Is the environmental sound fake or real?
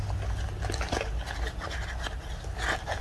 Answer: real